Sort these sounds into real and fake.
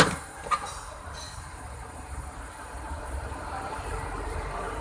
fake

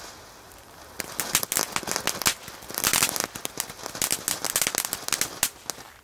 real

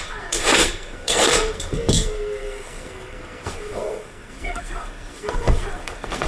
fake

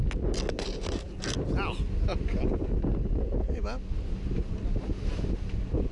real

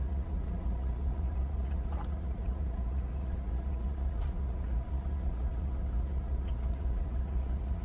fake